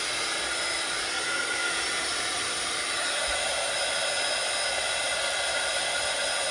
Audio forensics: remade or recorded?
recorded